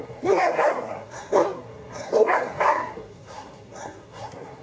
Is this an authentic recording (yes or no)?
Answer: no